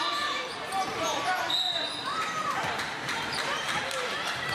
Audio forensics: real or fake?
fake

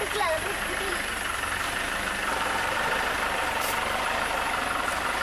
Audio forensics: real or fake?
fake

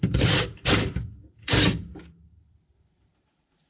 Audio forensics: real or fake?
fake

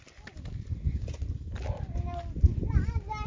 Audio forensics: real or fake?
real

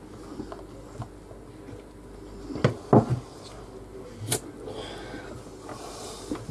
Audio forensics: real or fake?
real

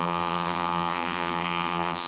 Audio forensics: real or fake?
fake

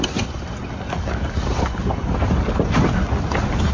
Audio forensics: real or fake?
real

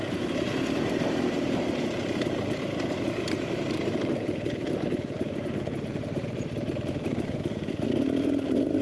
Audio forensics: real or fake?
fake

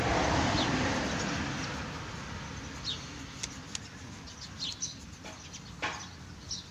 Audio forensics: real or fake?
real